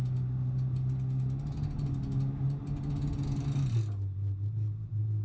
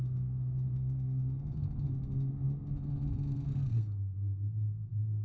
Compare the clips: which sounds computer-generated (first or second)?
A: second